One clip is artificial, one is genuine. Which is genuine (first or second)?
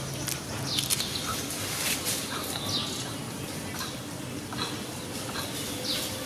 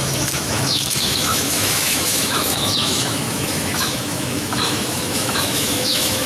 first